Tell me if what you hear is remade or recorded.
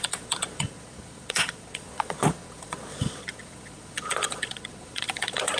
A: remade